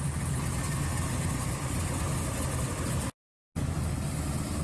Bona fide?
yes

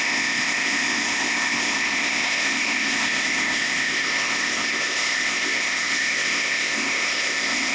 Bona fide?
no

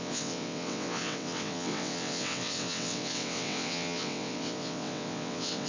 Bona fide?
no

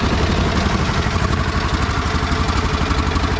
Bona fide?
yes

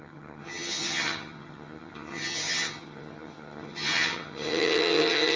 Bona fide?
no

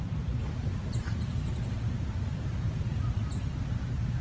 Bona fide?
yes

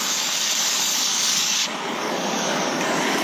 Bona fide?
no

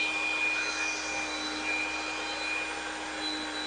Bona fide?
yes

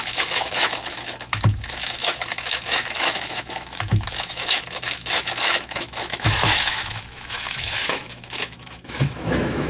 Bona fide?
no